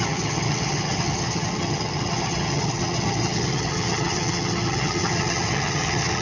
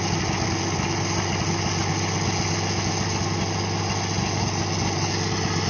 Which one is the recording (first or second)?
second